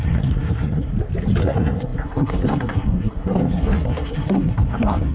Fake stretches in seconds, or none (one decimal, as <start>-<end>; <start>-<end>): 0.0-0.9; 1.4-5.1